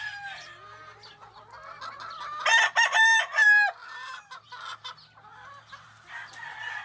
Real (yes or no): yes